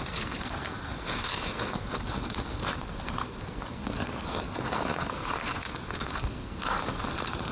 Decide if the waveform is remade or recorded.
remade